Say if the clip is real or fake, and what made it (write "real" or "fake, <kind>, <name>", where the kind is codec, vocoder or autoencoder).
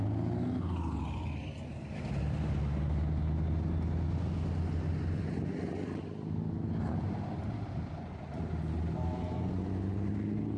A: real